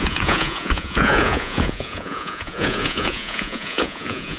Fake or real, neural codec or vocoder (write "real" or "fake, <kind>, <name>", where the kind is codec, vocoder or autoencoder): fake, vocoder, Vocos